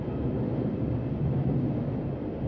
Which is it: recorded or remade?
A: recorded